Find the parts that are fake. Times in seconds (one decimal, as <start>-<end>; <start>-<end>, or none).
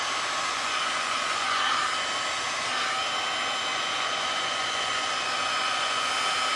0.5-1.6; 3.7-6.1